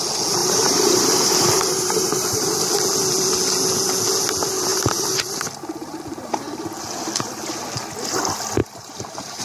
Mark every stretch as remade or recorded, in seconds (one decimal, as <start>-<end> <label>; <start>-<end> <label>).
0.0-0.4 recorded; 0.4-2.6 remade; 2.6-4.7 recorded; 4.7-5.3 remade; 5.3-5.8 recorded; 5.8-6.3 remade; 6.3-8.6 recorded; 8.6-9.4 remade

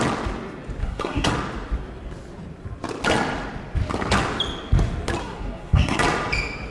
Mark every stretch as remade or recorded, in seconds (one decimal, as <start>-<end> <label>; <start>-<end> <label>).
0.0-0.8 recorded; 0.8-1.3 remade; 1.3-5.2 recorded; 5.2-6.0 remade; 6.0-6.7 recorded

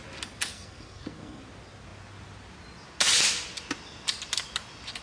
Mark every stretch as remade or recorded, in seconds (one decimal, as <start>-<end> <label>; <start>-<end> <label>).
0.0-0.5 recorded; 0.5-1.4 remade; 1.4-5.0 recorded

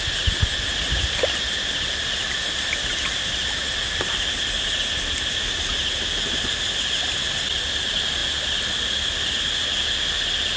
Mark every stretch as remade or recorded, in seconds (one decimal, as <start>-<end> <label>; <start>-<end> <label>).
0.0-10.6 recorded

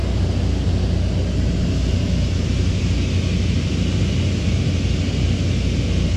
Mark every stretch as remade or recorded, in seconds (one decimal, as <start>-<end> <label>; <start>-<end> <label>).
0.0-6.2 recorded

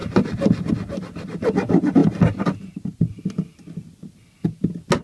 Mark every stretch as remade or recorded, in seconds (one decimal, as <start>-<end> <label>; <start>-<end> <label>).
0.0-5.0 recorded

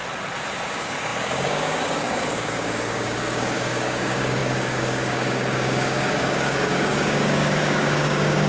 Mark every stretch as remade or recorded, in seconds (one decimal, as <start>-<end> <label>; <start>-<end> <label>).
0.0-0.7 recorded; 0.7-8.5 remade

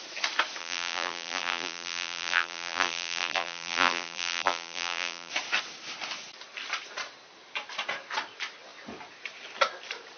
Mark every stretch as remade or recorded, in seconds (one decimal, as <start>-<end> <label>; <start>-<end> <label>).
0.0-0.6 recorded; 0.6-5.3 remade; 5.3-10.2 recorded